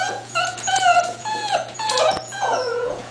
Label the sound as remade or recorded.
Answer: remade